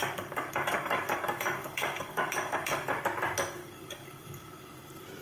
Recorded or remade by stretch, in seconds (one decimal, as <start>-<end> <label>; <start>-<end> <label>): 0.0-3.0 remade; 3.0-3.6 recorded; 3.6-4.6 remade; 4.6-5.2 recorded